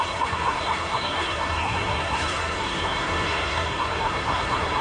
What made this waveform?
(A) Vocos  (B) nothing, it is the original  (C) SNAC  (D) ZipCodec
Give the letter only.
C